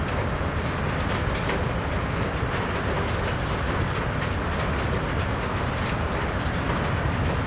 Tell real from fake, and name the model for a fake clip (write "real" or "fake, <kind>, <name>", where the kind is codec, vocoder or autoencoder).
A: real